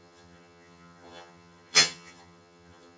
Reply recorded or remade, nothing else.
remade